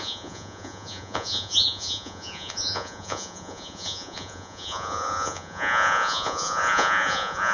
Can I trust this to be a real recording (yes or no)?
no